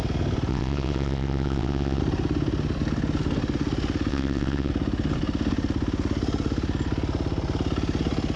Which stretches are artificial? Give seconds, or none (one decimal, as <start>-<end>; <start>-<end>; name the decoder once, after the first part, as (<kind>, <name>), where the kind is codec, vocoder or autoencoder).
0.5-2.0 (vocoder, WaveNeXt); 4.1-4.7

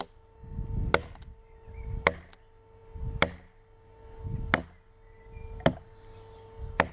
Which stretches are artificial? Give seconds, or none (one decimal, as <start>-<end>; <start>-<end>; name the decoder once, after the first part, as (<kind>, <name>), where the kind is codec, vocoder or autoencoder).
none

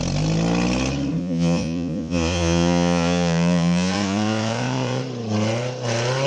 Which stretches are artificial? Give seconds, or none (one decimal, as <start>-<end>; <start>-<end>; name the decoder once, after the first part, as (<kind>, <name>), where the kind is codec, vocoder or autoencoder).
1.2-5.0 (vocoder, Vocos)

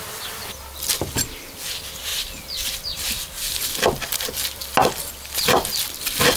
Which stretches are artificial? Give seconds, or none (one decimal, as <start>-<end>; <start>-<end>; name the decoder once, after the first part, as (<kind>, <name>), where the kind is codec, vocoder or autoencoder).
none

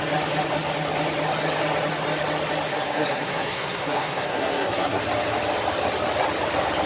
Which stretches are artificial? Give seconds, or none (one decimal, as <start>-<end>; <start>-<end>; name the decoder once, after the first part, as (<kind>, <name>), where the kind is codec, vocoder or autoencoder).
2.7-5.0 (codec, SNAC)

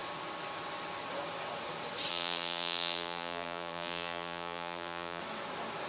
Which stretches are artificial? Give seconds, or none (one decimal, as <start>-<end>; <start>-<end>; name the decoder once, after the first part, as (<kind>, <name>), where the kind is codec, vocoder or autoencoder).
2.1-5.2 (vocoder, BigVGAN v2)

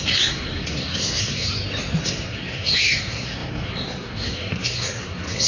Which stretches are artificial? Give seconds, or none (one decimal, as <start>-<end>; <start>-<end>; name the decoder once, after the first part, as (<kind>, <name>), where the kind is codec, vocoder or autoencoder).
0.0-1.5 (codec, SNAC); 2.0-5.5

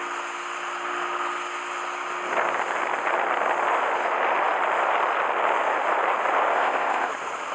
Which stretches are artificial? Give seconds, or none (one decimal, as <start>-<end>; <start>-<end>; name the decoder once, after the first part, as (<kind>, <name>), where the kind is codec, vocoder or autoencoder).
6.5-7.1 (codec, ZipCodec)